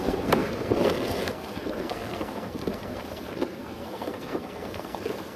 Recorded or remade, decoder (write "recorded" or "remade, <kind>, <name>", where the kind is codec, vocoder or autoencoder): remade, codec, SNAC